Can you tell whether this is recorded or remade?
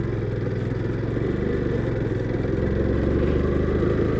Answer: recorded